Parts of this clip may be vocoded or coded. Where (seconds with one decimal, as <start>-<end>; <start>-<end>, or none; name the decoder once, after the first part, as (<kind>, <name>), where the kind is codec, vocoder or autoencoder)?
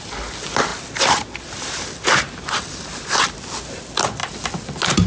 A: none